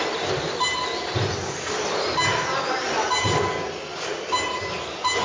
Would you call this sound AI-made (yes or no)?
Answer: no